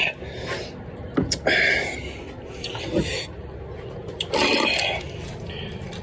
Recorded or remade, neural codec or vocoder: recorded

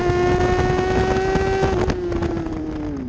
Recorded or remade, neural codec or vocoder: recorded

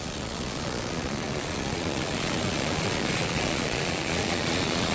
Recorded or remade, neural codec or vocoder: remade, vocoder, Vocos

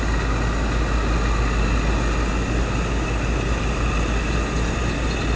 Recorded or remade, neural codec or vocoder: recorded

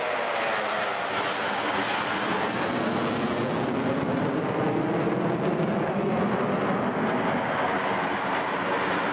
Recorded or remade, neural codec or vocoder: recorded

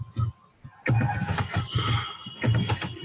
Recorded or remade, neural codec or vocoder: recorded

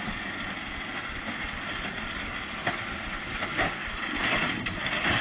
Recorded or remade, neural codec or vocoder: recorded